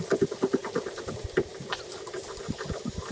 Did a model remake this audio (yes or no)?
no